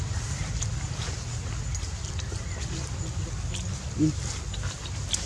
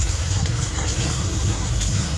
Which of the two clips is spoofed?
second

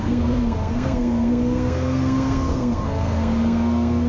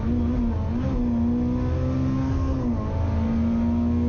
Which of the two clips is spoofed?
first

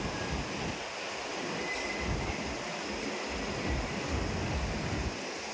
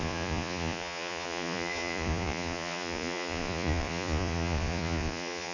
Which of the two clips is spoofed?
second